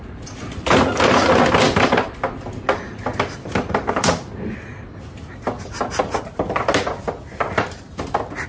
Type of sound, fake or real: real